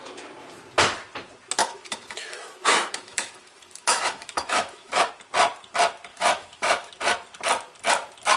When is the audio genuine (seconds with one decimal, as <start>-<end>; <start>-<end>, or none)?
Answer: 0.0-1.6; 5.1-6.1; 6.9-8.4